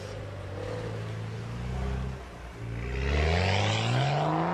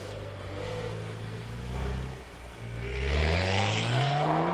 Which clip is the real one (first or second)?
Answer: first